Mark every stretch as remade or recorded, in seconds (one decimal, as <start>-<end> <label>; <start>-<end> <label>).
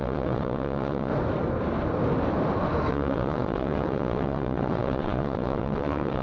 0.0-1.1 remade; 1.1-2.9 recorded; 2.9-6.2 remade